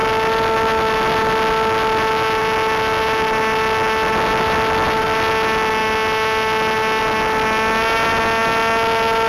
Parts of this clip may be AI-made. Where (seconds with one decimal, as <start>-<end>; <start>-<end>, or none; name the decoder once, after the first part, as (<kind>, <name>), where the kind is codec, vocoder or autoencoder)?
none